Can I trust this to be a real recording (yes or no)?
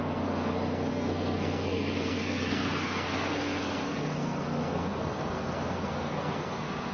no